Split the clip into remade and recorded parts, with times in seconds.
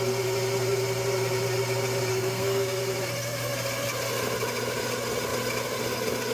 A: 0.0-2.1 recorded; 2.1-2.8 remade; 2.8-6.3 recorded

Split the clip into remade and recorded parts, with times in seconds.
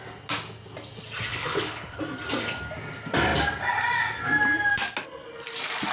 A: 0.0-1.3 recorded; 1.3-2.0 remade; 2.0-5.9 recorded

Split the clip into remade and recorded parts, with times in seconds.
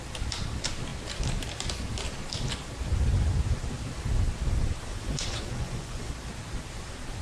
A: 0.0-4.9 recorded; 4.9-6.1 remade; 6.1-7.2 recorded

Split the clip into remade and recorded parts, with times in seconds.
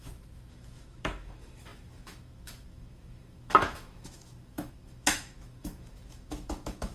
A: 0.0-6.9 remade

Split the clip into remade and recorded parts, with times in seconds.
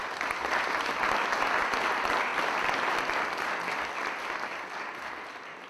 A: 0.0-5.7 recorded